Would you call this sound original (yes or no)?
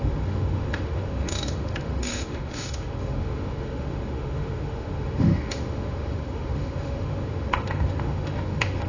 no